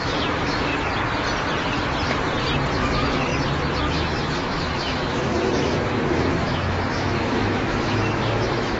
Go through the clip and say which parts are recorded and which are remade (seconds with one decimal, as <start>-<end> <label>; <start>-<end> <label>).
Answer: 0.0-0.7 remade; 0.7-2.7 recorded; 2.7-3.3 remade; 3.3-3.9 recorded; 3.9-8.8 remade